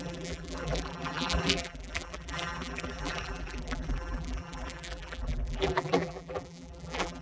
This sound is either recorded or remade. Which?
remade